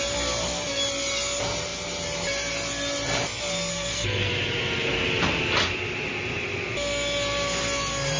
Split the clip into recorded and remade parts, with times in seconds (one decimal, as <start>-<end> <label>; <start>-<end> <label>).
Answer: 0.0-3.7 recorded; 3.7-4.3 remade; 4.3-8.2 recorded